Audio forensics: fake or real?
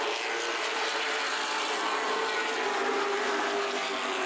real